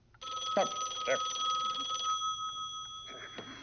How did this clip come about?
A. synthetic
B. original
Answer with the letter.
B